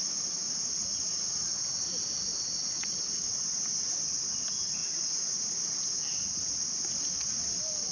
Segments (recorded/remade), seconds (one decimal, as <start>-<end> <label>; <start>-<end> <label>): 0.0-1.0 remade; 1.0-4.8 recorded; 4.8-5.7 remade; 5.7-7.9 recorded